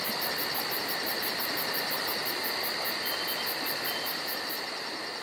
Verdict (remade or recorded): recorded